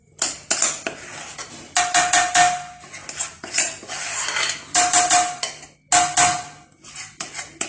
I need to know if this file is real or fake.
real